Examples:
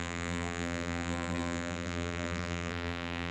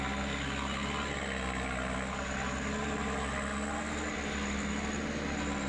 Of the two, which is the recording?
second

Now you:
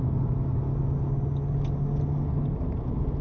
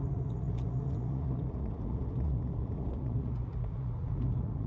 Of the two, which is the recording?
first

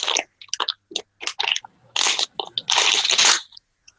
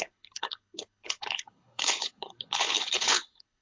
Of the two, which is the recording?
first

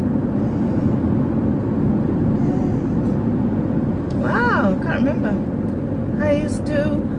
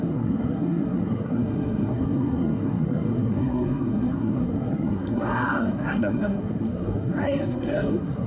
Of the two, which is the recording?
first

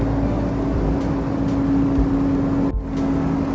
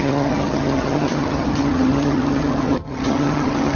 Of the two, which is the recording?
first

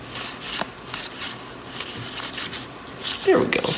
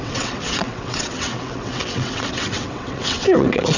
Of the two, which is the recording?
first